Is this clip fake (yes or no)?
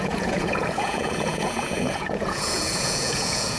yes